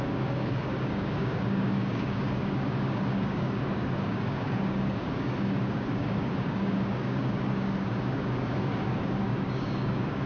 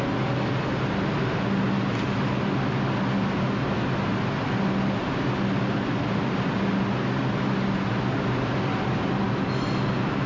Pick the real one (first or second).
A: second